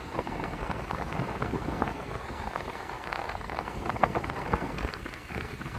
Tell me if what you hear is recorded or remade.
remade